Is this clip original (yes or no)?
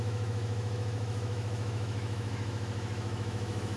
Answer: no